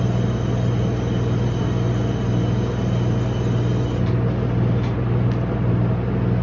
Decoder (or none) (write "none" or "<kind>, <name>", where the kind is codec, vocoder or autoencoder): none